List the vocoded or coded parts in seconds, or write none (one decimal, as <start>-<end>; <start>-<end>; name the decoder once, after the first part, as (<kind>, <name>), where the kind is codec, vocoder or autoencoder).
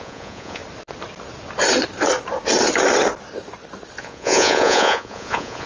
0.0-0.6 (vocoder, Vocos); 4.0-5.7